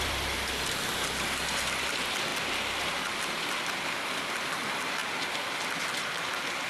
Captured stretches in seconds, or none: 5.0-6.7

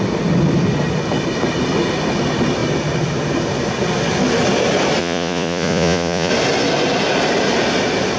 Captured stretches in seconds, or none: 0.0-5.0; 6.3-8.2